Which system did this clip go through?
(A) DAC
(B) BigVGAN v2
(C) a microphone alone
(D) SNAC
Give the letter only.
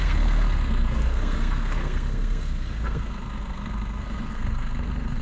D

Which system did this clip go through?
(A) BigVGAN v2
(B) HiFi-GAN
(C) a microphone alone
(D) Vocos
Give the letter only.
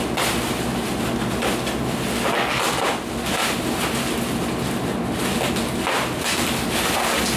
C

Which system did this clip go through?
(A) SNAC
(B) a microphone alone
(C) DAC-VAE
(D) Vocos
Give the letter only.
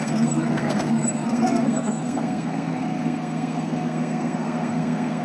A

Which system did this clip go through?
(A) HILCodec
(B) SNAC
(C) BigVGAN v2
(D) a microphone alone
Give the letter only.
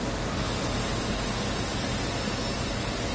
D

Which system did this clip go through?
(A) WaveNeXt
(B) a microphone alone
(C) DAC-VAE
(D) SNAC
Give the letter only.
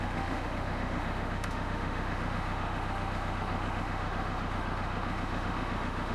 C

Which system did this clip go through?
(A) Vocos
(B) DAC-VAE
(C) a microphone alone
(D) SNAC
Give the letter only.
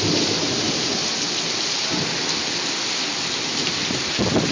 C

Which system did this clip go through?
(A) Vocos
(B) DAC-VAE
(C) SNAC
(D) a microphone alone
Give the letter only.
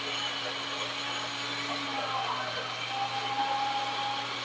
D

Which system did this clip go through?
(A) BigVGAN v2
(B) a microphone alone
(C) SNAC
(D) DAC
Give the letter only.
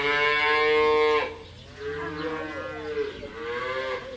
B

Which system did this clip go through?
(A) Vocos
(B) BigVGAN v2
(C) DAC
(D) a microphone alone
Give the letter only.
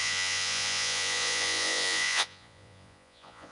A